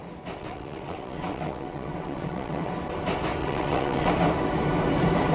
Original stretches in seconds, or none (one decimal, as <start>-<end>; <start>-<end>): 0.0-0.4; 2.7-3.4; 4.1-5.3